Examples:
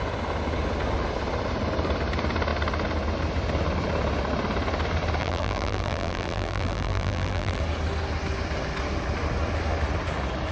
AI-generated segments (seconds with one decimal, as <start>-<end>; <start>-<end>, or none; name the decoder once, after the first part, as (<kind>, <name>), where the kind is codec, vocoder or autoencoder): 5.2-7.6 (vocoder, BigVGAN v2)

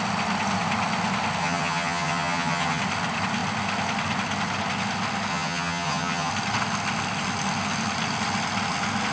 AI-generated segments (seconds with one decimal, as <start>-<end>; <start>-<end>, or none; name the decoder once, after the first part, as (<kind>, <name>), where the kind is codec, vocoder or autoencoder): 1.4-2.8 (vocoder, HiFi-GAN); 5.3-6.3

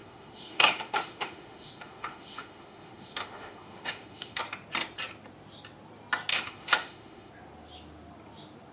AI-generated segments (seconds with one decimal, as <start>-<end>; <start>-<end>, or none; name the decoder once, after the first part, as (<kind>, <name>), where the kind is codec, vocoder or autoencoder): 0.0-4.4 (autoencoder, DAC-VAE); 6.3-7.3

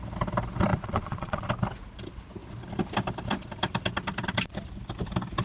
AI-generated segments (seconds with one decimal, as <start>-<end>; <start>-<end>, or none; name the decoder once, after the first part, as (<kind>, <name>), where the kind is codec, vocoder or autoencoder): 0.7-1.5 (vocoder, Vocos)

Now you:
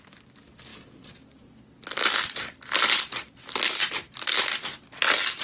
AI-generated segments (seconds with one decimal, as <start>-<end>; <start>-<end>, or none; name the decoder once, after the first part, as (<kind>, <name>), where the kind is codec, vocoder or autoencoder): none